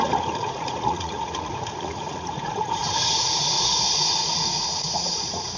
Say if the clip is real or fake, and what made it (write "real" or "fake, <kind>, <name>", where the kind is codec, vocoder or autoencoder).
fake, vocoder, Vocos